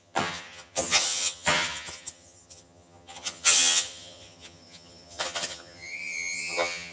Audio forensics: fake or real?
fake